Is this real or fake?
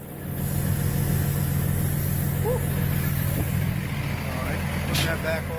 real